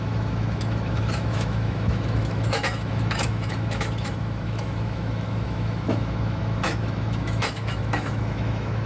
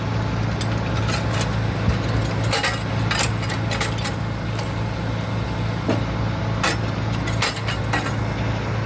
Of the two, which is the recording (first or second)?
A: second